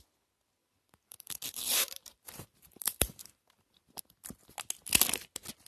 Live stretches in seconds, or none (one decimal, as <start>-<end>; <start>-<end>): 0.0-0.6; 4.0-5.7